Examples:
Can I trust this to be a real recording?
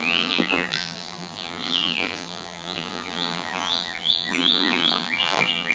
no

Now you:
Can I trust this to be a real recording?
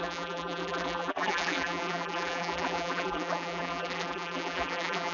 no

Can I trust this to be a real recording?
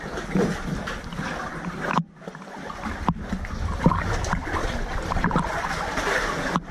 yes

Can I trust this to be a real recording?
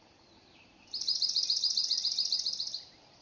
no